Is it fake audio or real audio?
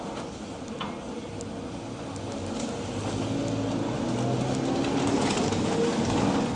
real